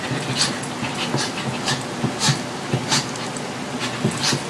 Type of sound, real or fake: real